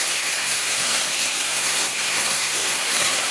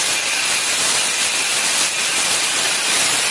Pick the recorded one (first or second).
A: second